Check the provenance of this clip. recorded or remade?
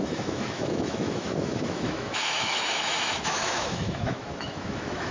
remade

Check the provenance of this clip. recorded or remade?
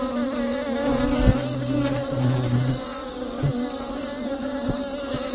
recorded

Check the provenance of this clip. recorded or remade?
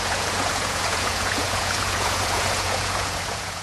remade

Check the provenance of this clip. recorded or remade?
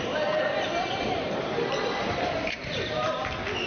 remade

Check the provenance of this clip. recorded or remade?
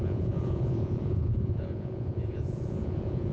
remade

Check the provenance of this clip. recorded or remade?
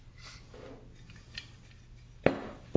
recorded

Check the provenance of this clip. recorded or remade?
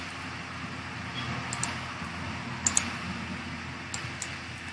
recorded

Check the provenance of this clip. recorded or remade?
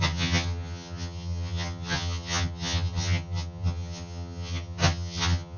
remade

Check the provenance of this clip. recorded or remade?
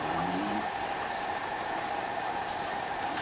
remade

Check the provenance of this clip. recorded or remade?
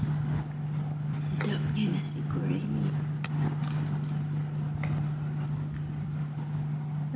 recorded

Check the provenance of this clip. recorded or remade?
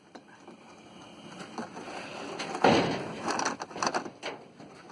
recorded